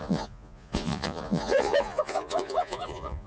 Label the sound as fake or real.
fake